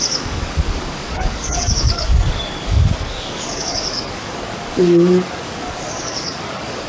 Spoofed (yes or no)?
yes